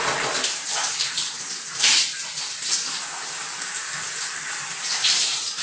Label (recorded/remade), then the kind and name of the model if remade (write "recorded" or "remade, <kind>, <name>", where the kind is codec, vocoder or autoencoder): remade, vocoder, BigVGAN v2